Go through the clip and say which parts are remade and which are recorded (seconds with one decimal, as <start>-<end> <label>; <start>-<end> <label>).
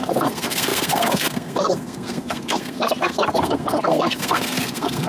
0.0-5.1 remade